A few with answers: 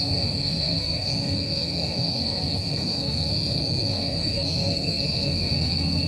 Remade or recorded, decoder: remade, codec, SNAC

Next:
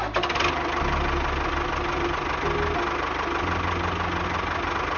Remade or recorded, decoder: recorded